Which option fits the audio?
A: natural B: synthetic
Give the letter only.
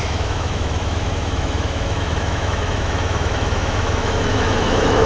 B